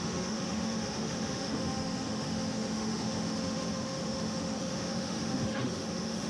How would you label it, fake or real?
fake